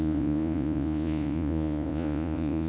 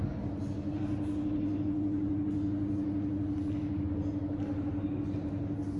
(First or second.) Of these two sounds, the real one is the second